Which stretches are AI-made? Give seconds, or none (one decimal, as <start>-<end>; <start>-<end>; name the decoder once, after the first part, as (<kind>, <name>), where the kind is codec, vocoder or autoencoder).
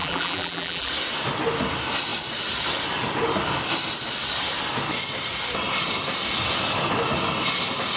0.0-0.9 (vocoder, BigVGAN v2)